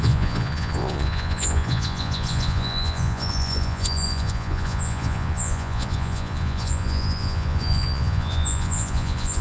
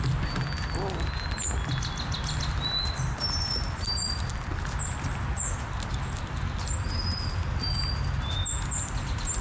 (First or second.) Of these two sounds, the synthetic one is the first